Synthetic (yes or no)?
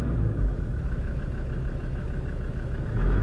yes